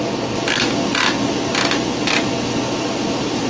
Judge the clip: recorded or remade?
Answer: recorded